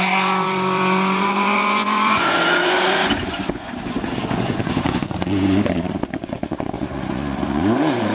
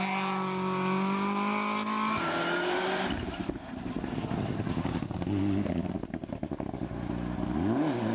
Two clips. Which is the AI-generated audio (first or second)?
first